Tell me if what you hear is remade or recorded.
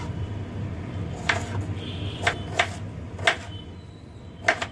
recorded